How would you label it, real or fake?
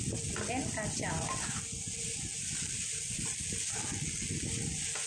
real